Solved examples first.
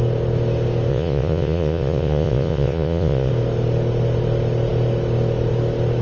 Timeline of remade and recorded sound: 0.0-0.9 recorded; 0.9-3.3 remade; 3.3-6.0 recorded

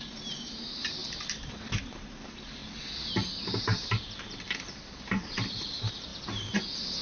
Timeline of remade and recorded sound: 0.0-1.0 remade; 1.0-1.5 recorded; 1.5-2.6 remade; 2.6-3.9 recorded; 3.9-6.1 remade; 6.1-7.0 recorded

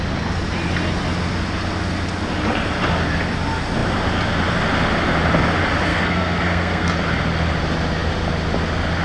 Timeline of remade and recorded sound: 0.0-5.9 recorded; 5.9-6.9 remade; 6.9-9.0 recorded

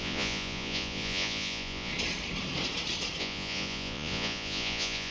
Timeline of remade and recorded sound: 0.0-1.9 remade; 1.9-3.2 recorded; 3.2-5.1 remade

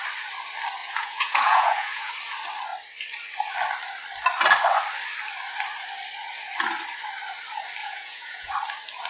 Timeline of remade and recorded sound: 0.0-0.8 recorded; 0.8-2.1 remade; 2.1-7.8 recorded; 7.8-8.5 remade; 8.5-9.1 recorded